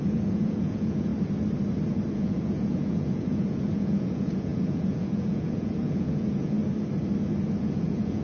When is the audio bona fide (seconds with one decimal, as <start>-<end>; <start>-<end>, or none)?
1.1-2.1; 6.6-7.6